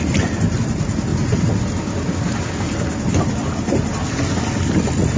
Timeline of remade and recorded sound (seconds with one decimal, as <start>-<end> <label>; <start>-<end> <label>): 0.0-5.2 recorded